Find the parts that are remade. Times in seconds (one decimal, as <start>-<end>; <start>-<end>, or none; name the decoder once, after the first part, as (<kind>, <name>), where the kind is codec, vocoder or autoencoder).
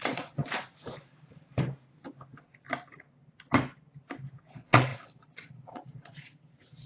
0.0-0.4 (vocoder, Vocos); 4.5-6.9